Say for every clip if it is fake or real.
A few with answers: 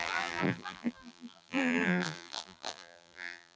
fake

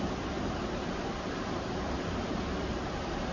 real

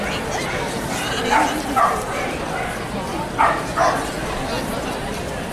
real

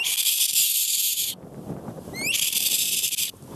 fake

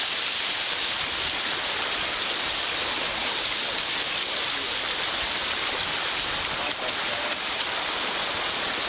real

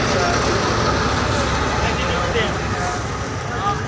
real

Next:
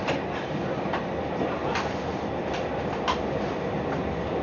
fake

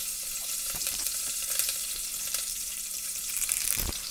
fake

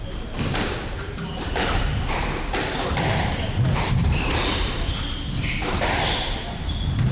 fake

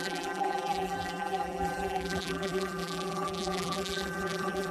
fake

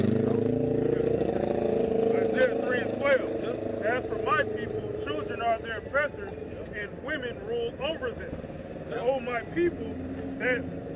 real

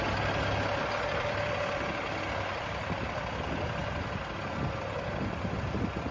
real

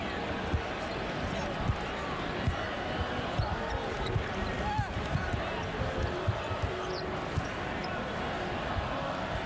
real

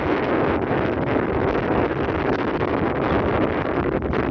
real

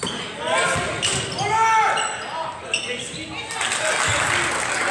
real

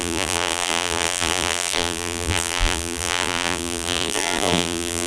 fake